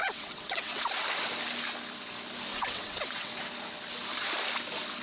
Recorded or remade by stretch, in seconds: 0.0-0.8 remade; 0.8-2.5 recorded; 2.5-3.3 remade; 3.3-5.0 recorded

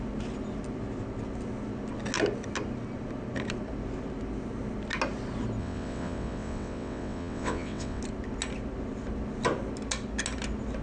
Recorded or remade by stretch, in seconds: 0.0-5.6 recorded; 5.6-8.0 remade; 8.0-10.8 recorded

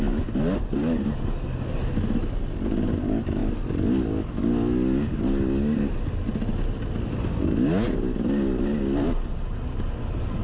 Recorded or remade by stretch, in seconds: 0.0-10.4 recorded

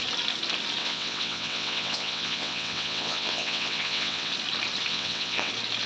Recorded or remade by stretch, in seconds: 0.0-0.8 recorded; 0.8-4.3 remade; 4.3-4.9 recorded; 4.9-5.5 remade; 5.5-5.9 recorded

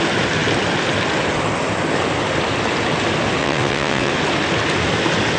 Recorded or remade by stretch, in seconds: 0.0-3.4 recorded; 3.4-4.1 remade; 4.1-5.4 recorded